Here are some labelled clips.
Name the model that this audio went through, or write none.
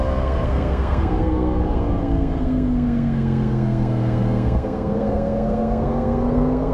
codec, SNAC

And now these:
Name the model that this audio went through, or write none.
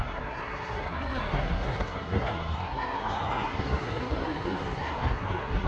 codec, SNAC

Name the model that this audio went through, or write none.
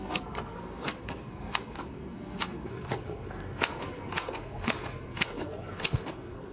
codec, SNAC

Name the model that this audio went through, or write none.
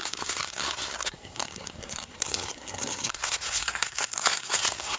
codec, SNAC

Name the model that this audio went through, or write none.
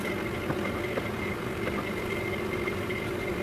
none